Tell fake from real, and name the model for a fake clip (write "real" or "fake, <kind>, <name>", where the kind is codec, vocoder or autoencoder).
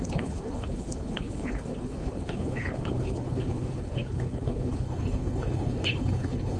fake, codec, HILCodec